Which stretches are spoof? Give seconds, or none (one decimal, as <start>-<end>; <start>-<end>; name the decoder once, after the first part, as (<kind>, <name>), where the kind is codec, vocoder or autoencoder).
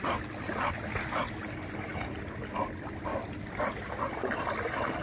3.1-3.9 (vocoder, BigVGAN v2)